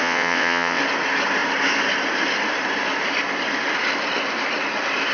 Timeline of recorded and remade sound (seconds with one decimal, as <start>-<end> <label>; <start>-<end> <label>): 0.0-0.8 remade; 0.8-5.1 recorded